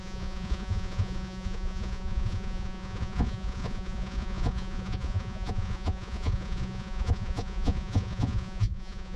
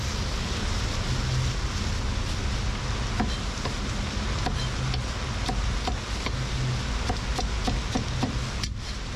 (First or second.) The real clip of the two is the second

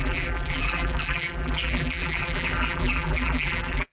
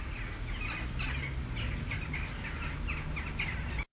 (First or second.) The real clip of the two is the second